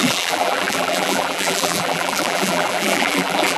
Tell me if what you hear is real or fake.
fake